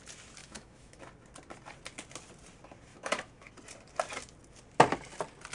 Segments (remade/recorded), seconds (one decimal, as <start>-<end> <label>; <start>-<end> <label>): 0.0-0.4 recorded; 0.4-1.0 remade; 1.0-2.9 recorded; 2.9-3.5 remade; 3.5-5.5 recorded